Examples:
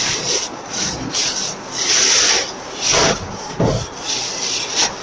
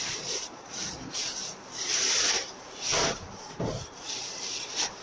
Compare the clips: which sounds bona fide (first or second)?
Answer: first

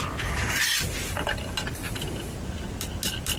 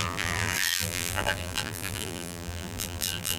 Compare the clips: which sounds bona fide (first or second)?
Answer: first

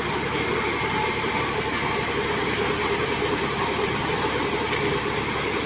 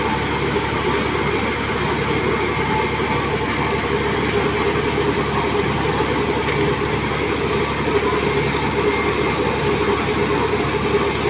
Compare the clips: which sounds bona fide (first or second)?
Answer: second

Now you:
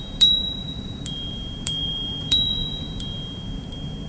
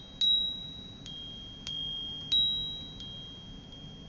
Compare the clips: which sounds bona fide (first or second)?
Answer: second